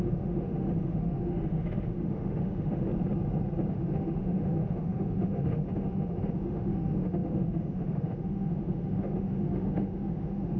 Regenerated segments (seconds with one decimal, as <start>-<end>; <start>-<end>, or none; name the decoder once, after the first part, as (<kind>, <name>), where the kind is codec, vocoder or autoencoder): 0.0-2.9 (autoencoder, DAC-VAE); 3.7-10.6